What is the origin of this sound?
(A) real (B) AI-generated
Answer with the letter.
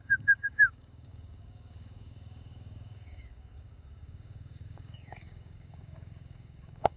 B